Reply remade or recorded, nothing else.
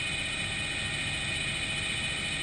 recorded